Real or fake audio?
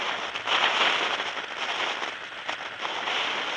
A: real